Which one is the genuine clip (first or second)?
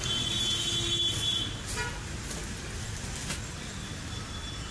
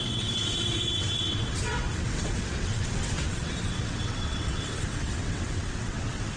first